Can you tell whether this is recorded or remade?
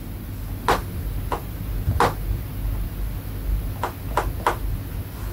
recorded